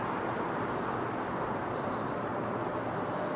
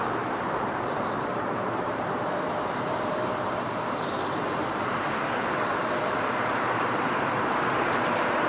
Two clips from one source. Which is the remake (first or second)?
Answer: second